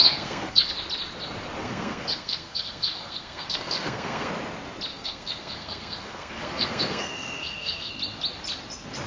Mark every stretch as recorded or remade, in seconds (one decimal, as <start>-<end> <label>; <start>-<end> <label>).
0.0-0.7 remade; 0.7-1.6 recorded; 1.6-4.3 remade; 4.3-4.9 recorded; 4.9-7.9 remade; 7.9-9.1 recorded